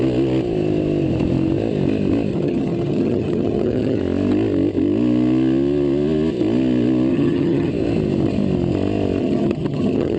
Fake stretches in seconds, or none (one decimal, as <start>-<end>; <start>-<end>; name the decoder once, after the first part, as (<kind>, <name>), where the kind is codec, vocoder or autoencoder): 2.3-4.0 (vocoder, HiFi-GAN); 7.1-7.7; 9.2-10.2